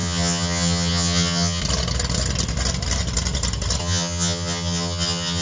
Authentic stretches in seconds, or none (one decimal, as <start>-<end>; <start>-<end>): 1.6-3.8